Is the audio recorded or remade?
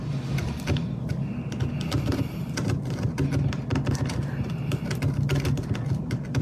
recorded